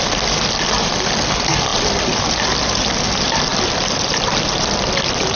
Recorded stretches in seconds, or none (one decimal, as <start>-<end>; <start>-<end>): 0.0-5.4